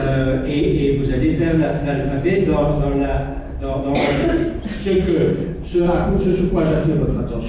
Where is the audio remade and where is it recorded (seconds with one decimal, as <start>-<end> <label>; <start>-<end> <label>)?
0.0-7.5 recorded